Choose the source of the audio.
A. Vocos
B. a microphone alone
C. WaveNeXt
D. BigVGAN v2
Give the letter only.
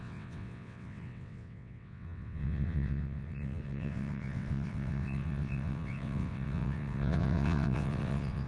C